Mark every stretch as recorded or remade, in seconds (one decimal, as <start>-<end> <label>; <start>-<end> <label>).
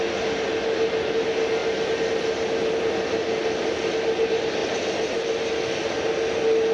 0.0-4.6 recorded; 4.6-5.4 remade; 5.4-6.7 recorded